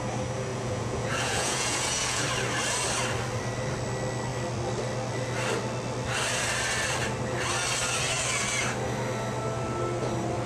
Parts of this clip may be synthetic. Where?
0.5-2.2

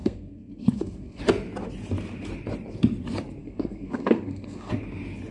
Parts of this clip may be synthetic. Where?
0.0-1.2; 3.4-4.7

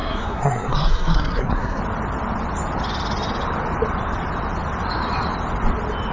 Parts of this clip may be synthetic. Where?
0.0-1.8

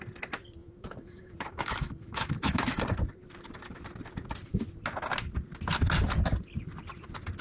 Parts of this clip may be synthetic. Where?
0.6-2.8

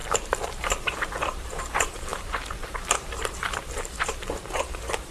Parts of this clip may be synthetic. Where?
0.0-5.1